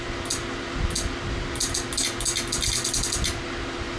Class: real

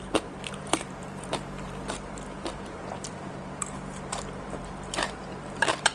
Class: fake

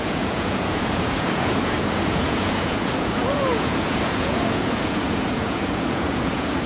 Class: fake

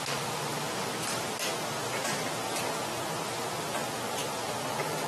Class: real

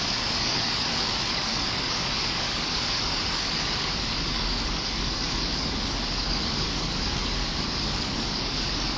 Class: fake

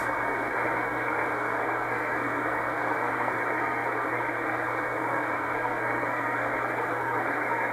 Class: fake